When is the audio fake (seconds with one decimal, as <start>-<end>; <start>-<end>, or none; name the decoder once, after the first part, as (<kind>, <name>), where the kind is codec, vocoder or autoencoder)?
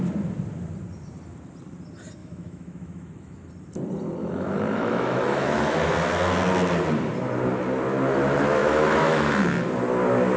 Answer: 2.2-3.5 (autoencoder, DAC-VAE); 4.2-5.9; 8.6-9.3